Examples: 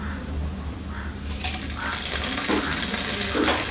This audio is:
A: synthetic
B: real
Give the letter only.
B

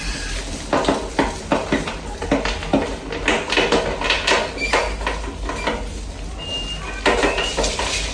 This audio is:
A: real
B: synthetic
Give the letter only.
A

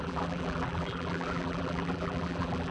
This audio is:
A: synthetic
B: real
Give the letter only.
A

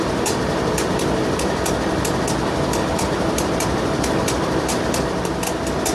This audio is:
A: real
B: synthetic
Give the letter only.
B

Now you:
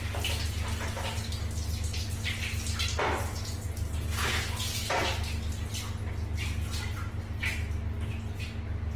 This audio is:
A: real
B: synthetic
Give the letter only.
A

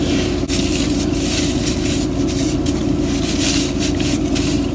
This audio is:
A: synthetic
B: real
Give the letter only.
B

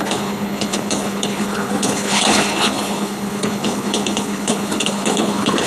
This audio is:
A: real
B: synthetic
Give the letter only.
B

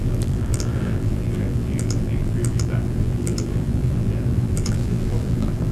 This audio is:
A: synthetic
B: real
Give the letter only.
A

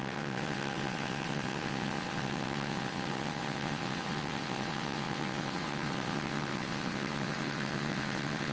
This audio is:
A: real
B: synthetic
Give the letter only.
B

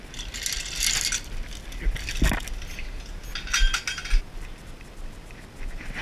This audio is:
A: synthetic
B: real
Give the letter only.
B